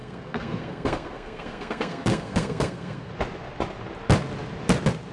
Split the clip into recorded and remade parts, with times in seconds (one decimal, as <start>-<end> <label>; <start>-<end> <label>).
0.0-3.1 remade; 3.1-5.1 recorded